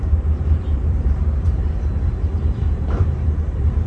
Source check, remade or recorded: remade